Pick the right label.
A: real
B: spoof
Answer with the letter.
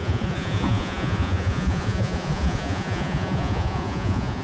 B